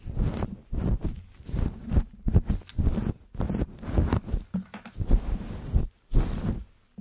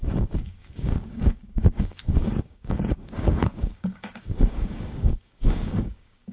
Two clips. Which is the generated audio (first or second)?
second